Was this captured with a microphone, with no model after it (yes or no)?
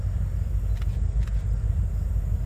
yes